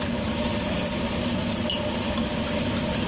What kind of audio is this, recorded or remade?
recorded